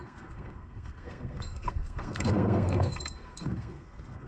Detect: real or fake fake